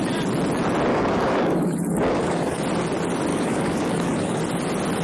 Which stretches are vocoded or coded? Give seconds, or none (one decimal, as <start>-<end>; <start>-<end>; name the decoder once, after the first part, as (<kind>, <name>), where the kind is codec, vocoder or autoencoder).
0.9-2.6 (codec, DAC); 3.3-4.4